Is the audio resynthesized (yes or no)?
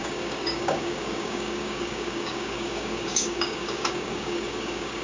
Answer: yes